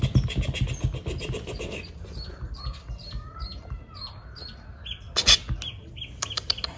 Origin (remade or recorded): recorded